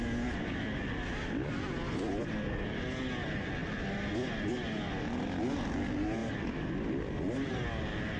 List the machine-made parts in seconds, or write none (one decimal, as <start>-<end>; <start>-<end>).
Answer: none